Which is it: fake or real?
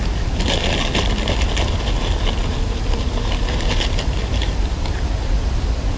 real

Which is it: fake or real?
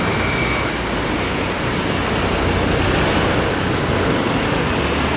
real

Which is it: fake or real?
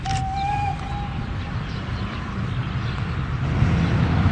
real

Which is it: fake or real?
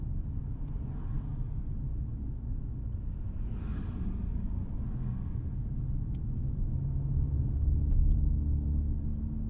real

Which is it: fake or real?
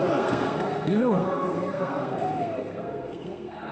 fake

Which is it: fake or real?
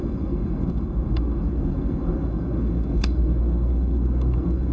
fake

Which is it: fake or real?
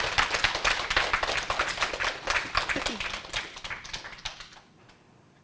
real